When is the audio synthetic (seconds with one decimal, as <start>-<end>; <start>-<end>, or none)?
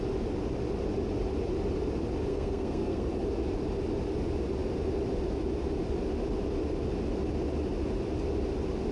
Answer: 2.3-3.1